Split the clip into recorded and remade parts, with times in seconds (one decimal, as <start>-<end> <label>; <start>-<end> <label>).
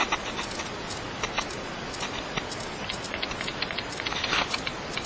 0.0-5.1 recorded